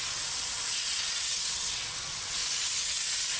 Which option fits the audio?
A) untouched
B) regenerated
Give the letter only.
B